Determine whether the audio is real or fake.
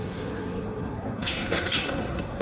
fake